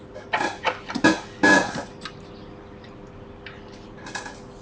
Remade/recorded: recorded